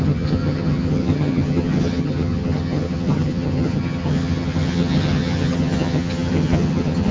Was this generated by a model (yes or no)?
yes